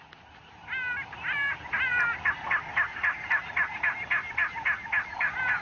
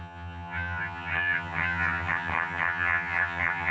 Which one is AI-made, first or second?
second